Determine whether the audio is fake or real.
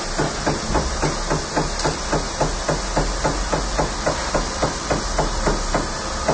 real